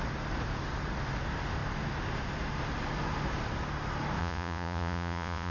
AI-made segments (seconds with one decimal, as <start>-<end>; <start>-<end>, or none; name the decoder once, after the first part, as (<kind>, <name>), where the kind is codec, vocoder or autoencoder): 4.2-5.5 (vocoder, Vocos)